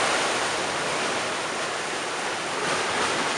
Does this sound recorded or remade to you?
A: recorded